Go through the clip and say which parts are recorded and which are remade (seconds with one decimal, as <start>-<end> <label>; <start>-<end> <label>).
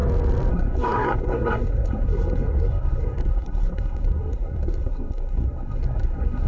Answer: 0.0-0.5 recorded; 0.5-6.5 remade